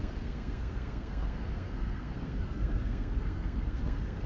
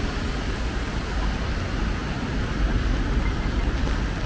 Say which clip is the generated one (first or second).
first